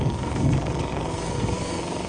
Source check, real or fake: fake